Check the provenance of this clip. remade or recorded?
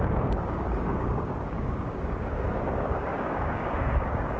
remade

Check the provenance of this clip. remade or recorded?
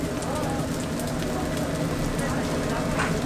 recorded